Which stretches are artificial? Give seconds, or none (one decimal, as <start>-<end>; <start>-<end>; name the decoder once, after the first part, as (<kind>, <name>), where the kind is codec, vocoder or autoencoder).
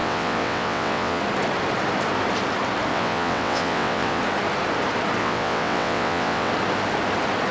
0.0-1.2 (vocoder, WaveNeXt); 2.9-4.2; 5.2-6.5